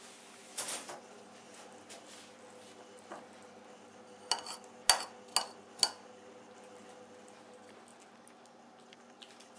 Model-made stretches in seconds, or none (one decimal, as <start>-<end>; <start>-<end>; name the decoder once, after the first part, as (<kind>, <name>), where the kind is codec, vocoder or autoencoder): none